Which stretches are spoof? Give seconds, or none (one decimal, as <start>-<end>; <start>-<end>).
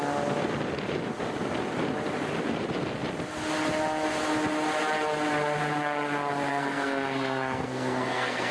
6.5-8.5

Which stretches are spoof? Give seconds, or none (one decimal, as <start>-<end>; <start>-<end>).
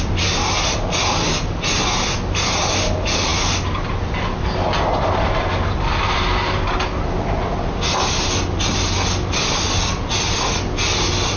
none